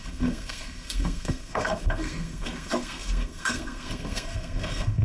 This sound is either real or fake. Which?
fake